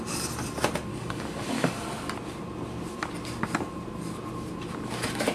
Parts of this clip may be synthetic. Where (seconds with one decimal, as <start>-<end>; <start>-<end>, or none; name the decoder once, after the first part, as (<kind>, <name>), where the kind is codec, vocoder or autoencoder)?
0.9-1.9 (codec, DAC)